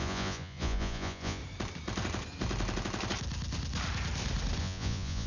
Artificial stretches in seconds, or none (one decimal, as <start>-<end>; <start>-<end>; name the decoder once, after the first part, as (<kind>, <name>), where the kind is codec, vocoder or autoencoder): 0.0-1.4 (vocoder, Vocos); 4.6-5.3